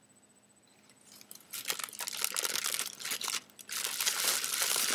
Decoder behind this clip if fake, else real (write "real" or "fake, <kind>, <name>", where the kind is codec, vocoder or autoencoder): real